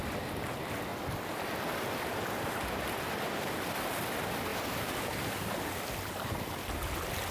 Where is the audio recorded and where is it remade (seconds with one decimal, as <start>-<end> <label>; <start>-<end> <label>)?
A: 0.0-7.3 recorded